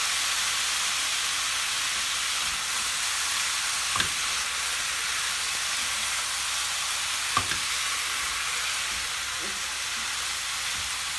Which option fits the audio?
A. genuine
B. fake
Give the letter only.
A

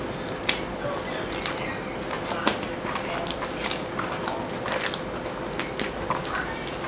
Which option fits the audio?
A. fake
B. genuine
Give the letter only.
B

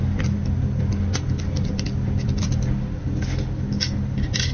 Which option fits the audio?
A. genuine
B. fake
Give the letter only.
A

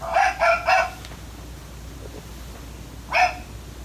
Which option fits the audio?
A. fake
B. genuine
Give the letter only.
B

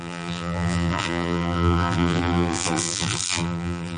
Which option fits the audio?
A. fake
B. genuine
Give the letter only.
A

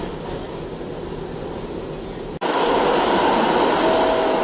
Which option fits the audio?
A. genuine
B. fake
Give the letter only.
A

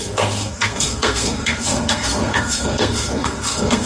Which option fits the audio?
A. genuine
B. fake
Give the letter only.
B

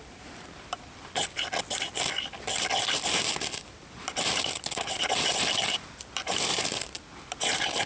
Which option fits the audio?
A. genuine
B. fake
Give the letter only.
B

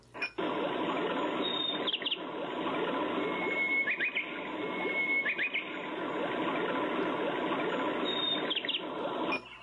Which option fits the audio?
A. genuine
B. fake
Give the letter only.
A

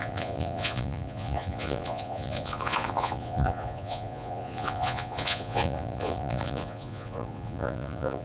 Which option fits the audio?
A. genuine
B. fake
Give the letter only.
B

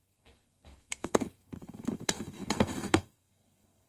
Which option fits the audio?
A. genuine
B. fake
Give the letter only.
B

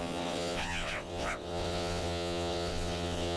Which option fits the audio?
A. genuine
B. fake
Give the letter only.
B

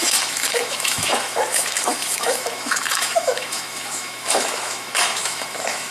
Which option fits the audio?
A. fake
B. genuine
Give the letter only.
A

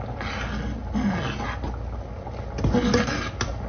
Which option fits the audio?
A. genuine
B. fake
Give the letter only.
A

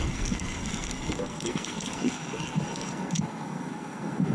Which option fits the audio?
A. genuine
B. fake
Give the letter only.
B